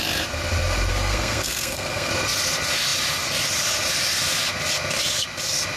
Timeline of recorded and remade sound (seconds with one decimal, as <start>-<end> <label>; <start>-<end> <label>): 0.0-0.9 recorded; 0.9-2.1 remade; 2.1-5.8 recorded